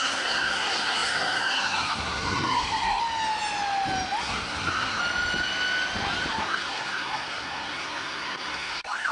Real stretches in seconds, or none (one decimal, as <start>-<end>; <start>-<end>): 3.0-4.2; 5.0-6.3